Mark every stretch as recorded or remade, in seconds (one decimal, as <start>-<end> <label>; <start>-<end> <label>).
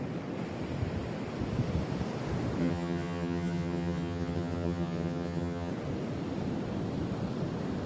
0.0-2.6 recorded; 2.6-5.7 remade; 5.7-7.9 recorded